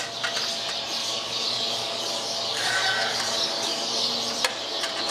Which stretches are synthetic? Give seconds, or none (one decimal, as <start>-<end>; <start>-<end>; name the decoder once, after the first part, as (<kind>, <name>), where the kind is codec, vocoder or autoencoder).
1.0-4.1 (codec, DAC)